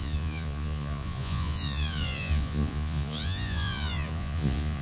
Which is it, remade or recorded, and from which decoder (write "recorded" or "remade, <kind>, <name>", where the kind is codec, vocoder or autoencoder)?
remade, vocoder, Vocos